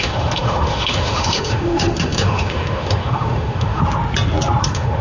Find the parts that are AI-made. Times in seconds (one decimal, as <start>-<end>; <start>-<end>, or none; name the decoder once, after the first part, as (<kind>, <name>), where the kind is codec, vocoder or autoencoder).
0.0-3.8 (autoencoder, DAC-VAE); 4.6-5.0